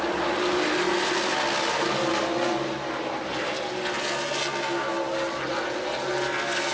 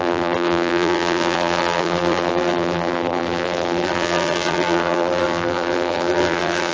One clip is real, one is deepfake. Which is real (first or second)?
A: first